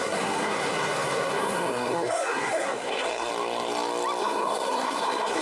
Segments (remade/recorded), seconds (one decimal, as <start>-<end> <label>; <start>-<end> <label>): 0.0-3.3 remade; 3.3-4.2 recorded; 4.2-5.4 remade